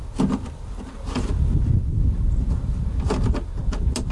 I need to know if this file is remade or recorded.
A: recorded